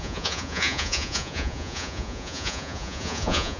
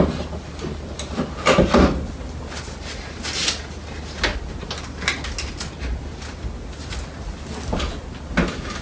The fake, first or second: first